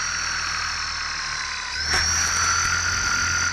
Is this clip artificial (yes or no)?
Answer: no